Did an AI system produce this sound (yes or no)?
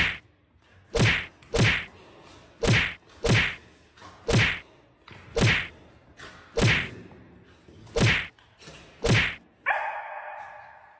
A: no